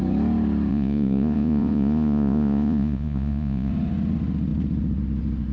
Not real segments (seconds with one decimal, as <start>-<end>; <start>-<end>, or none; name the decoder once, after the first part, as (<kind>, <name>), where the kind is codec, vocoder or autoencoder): 0.7-3.7 (vocoder, Vocos)